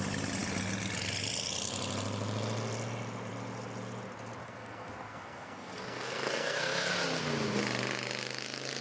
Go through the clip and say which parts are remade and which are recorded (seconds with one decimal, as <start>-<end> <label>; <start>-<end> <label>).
0.0-4.4 recorded; 4.4-6.9 remade; 6.9-8.8 recorded